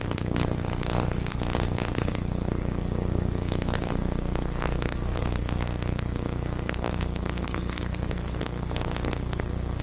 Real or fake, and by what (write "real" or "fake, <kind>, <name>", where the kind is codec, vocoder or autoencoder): fake, codec, SNAC